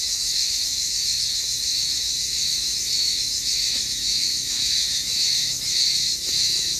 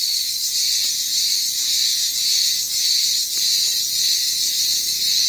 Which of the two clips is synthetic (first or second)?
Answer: first